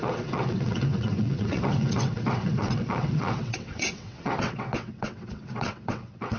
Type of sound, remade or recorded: remade